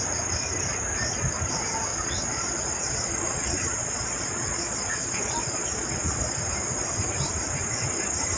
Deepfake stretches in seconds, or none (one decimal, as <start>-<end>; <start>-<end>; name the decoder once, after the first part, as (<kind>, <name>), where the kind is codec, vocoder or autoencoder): 1.9-6.4 (vocoder, Vocos)